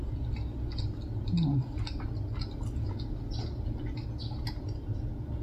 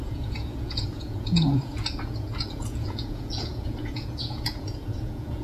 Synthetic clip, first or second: second